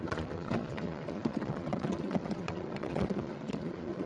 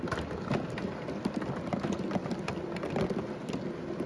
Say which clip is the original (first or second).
second